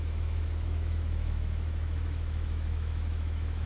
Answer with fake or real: fake